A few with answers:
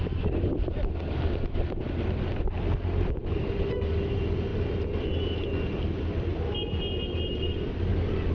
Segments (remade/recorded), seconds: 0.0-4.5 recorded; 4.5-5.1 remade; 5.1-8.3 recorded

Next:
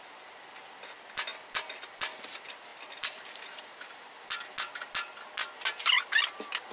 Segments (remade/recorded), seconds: 0.0-2.7 recorded; 2.7-4.1 remade; 4.1-6.7 recorded

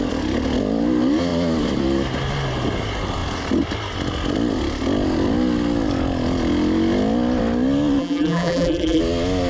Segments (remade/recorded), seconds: 0.0-8.0 recorded; 8.0-9.0 remade; 9.0-9.5 recorded

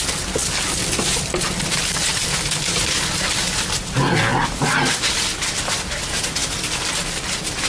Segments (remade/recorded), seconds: 0.0-7.7 recorded